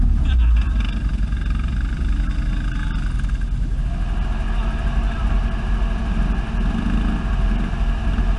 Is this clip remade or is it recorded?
recorded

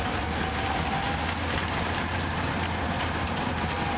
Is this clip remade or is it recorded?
recorded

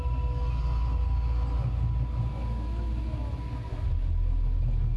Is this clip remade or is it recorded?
recorded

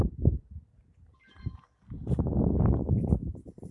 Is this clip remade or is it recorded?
remade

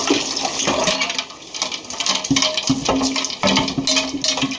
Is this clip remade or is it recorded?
recorded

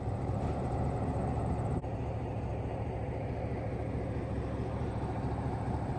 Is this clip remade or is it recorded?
remade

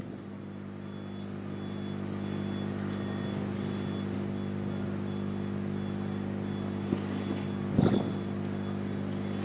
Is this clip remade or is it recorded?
recorded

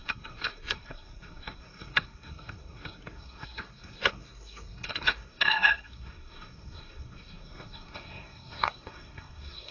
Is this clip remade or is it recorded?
remade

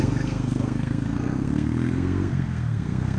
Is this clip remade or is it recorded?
remade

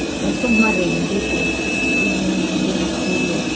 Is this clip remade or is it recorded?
recorded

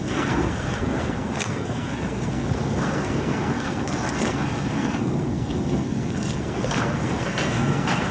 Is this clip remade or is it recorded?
remade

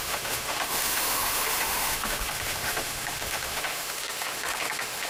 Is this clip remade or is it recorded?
remade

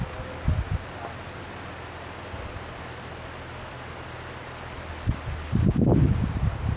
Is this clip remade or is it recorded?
remade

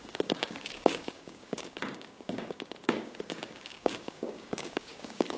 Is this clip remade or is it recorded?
remade